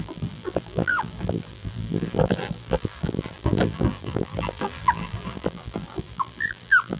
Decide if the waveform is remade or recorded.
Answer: remade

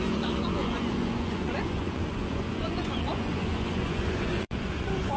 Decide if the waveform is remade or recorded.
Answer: remade